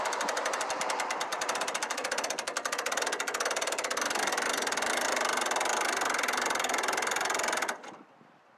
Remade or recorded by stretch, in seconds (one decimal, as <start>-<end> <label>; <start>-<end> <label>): 0.0-1.3 recorded; 1.3-2.1 remade; 2.1-8.6 recorded